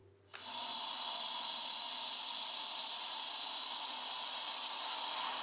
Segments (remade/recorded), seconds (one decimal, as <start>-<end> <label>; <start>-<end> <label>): 0.0-5.4 recorded